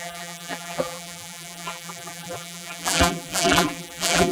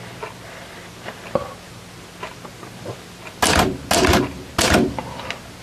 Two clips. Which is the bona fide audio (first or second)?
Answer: second